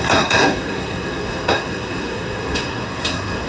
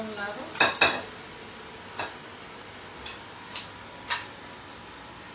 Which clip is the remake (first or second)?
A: first